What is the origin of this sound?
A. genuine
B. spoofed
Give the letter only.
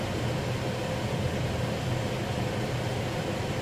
A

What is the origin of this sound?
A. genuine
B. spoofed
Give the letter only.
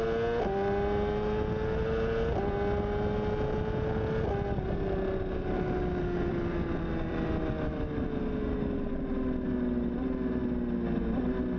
A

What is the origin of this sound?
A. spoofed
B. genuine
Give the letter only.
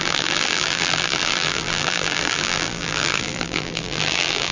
A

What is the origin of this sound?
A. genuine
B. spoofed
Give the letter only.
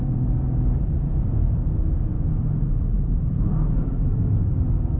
B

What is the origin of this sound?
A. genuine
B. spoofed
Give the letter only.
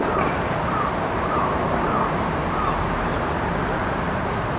B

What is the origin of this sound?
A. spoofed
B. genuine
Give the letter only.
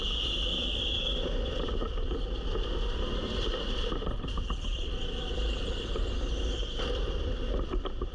A